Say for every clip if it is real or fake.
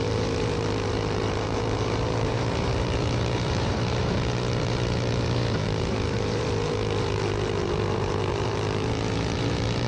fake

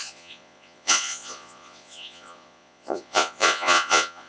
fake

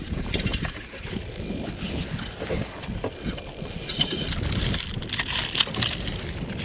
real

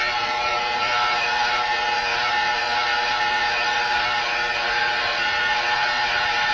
fake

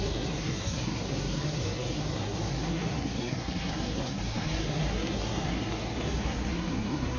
fake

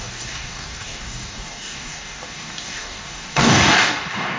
fake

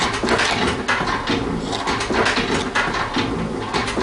real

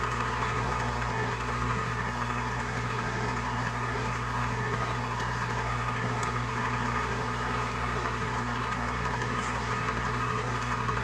fake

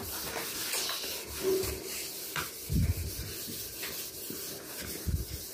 real